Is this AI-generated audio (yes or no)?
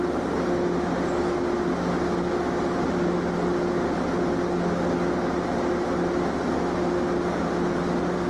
no